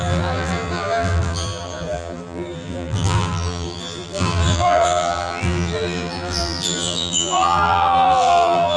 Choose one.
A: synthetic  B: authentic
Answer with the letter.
A